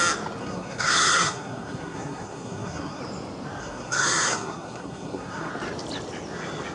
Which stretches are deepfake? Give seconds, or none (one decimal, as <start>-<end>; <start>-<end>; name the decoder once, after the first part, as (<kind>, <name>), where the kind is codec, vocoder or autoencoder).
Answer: 0.4-3.0 (codec, SNAC); 3.6-5.5